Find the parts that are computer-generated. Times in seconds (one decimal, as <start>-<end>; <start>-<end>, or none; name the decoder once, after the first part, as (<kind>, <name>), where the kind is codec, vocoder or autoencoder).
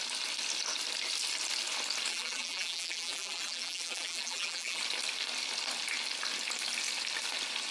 2.1-4.8 (vocoder, BigVGAN v2)